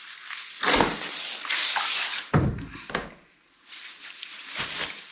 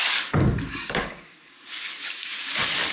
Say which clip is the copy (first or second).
second